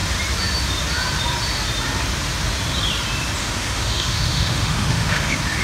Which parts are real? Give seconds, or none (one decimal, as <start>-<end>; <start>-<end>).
0.0-3.4